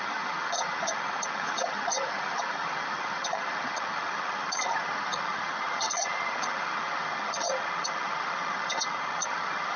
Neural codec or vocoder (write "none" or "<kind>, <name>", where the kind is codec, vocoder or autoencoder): vocoder, HiFi-GAN